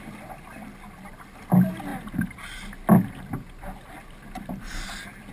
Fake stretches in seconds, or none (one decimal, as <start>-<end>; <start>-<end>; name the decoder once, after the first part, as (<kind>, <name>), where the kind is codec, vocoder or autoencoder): none